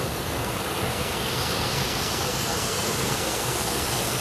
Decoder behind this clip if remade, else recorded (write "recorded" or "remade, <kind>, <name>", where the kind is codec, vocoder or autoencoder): remade, codec, SNAC